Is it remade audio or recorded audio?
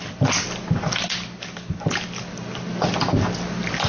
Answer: recorded